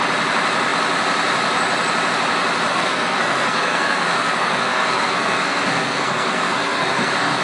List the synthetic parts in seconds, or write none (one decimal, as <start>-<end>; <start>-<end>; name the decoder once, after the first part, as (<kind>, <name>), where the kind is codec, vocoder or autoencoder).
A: 2.7-7.4 (codec, SNAC)